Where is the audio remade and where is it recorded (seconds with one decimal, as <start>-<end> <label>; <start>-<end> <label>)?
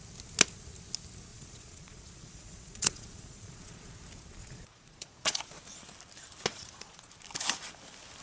0.0-1.3 recorded; 1.3-3.9 remade; 3.9-4.4 recorded; 4.4-5.4 remade; 5.4-6.5 recorded; 6.5-7.1 remade; 7.1-8.2 recorded